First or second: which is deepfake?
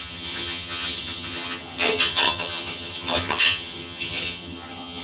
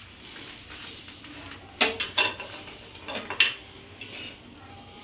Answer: first